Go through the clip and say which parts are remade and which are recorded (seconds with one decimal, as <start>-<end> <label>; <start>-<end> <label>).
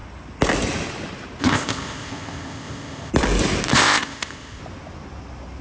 0.0-1.4 recorded; 1.4-3.1 remade; 3.1-3.7 recorded; 3.7-4.6 remade; 4.6-5.6 recorded